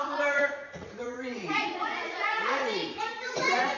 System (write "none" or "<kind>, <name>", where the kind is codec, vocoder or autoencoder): vocoder, Vocos